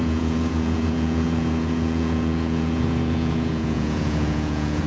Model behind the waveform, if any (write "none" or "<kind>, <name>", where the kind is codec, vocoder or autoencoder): vocoder, Vocos